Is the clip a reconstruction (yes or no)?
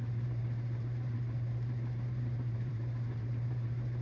yes